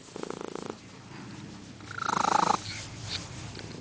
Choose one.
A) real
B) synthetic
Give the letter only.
A